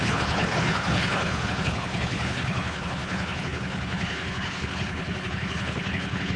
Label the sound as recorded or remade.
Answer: remade